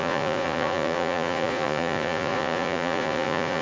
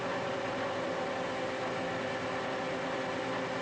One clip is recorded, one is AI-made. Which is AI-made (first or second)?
first